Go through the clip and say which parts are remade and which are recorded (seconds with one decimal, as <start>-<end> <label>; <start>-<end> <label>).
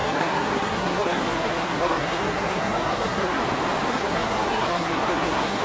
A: 0.0-3.4 remade; 3.4-3.9 recorded; 3.9-5.6 remade